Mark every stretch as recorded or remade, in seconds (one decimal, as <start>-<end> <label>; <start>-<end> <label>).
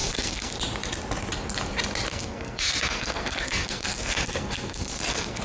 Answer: 0.0-0.5 remade; 0.5-2.1 recorded; 2.1-5.4 remade